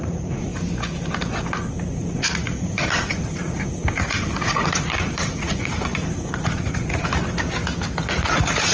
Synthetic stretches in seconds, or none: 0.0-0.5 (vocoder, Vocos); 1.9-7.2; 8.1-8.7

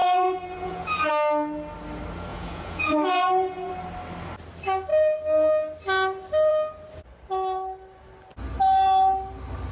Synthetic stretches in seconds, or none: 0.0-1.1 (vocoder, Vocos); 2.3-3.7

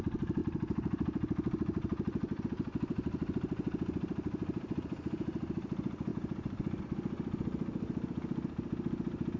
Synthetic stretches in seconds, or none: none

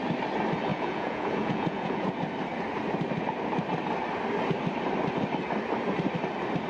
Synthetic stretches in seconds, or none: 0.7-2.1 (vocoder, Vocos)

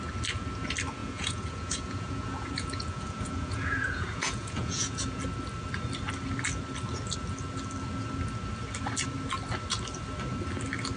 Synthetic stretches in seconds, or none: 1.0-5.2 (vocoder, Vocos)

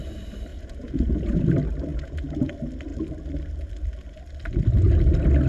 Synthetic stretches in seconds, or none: 0.5-1.4 (vocoder, Vocos); 1.9-2.5

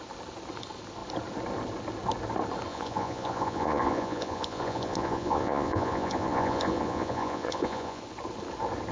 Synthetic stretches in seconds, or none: 2.7-8.0 (vocoder, Vocos)

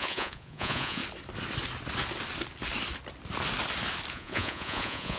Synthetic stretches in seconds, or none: 0.0-1.0 (vocoder, Vocos); 4.1-5.2